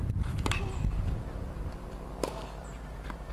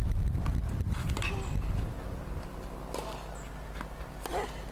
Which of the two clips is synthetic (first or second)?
first